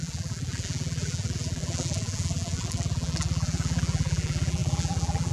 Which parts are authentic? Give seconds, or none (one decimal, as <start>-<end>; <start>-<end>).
none